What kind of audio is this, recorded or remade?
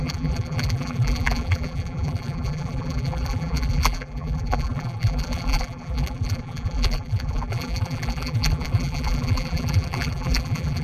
remade